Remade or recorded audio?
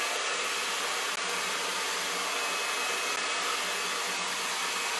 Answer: recorded